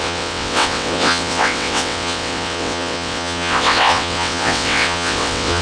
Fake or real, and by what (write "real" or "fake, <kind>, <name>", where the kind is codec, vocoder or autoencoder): fake, vocoder, WaveNeXt